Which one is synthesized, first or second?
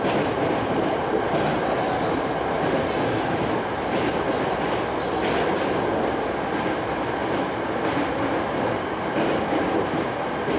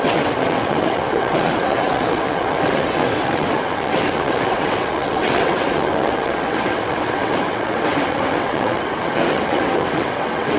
second